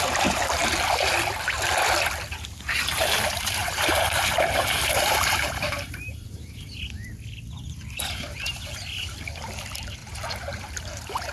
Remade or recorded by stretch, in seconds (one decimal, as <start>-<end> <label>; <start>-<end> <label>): 0.0-3.6 recorded; 3.6-6.8 remade; 6.8-10.0 recorded; 10.0-11.3 remade